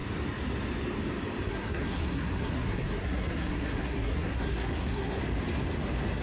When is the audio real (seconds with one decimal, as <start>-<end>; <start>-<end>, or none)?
0.0-1.5; 5.2-6.2